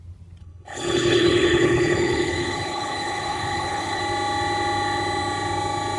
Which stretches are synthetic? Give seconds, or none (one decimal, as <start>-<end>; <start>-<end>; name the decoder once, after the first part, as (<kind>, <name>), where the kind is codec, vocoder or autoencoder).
0.4-4.0 (codec, HILCodec)